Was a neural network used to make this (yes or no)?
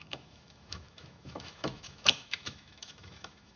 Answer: yes